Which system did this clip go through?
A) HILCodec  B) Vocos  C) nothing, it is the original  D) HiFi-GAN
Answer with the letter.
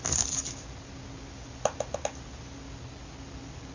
C